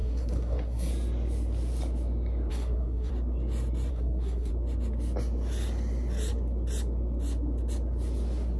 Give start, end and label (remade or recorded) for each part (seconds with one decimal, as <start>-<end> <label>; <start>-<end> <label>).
0.0-0.9 remade; 0.9-2.5 recorded; 2.5-3.1 remade; 3.1-3.9 recorded; 3.9-4.5 remade; 4.5-8.6 recorded